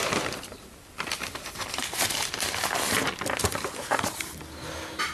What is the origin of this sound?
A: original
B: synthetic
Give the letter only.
B